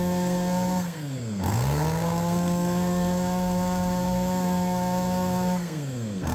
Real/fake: fake